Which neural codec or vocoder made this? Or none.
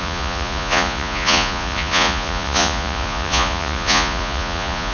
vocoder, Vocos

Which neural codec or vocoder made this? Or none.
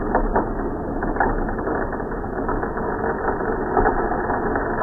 none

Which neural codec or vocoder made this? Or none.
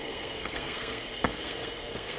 codec, SNAC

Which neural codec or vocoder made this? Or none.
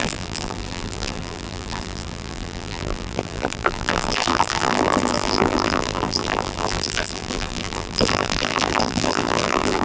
vocoder, BigVGAN v2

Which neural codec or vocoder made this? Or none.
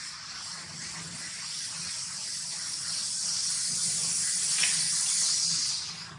none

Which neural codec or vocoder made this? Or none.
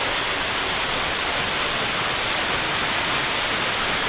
none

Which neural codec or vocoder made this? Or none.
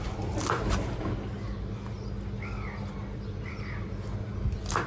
none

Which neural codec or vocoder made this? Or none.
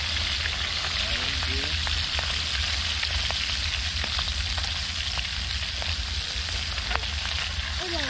none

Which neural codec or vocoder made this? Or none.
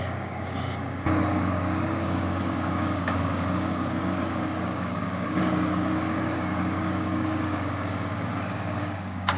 codec, DAC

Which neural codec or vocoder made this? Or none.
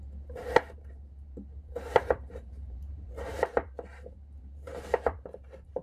vocoder, BigVGAN v2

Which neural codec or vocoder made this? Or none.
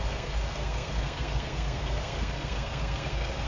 codec, SNAC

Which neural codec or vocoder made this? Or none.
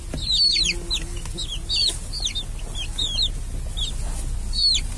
none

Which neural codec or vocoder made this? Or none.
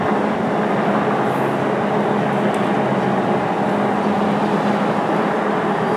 none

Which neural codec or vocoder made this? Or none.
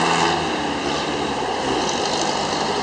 none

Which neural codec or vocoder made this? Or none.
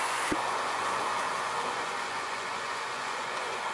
vocoder, Vocos